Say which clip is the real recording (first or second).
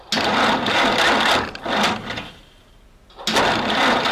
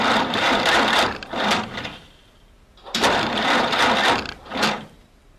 first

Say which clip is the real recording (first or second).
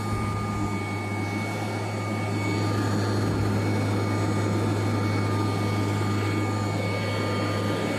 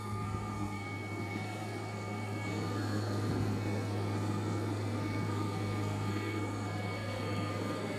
first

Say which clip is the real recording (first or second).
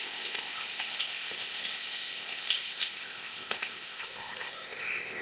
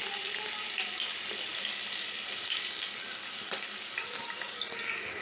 second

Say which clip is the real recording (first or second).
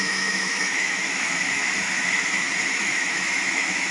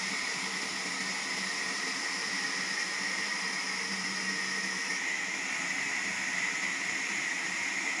second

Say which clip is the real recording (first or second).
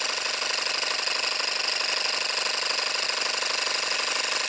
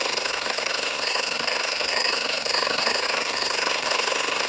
first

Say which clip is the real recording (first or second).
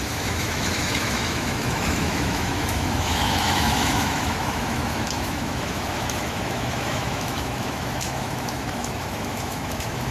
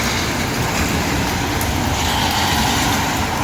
second